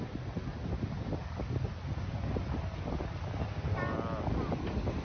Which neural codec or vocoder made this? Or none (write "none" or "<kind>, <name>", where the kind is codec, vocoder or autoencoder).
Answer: none